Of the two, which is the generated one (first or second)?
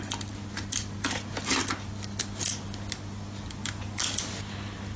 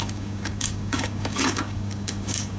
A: second